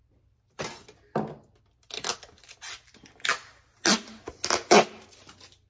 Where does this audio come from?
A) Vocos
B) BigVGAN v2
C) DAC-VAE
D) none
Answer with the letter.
D